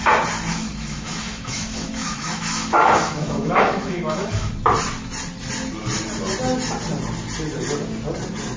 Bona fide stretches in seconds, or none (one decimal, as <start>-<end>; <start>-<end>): 0.0-0.5; 4.5-8.6